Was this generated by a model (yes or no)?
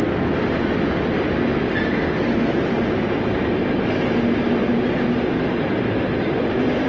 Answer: no